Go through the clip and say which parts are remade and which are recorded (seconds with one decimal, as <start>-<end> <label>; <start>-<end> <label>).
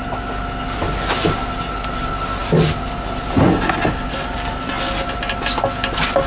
0.0-6.3 recorded